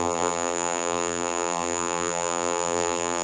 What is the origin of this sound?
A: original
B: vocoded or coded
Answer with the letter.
B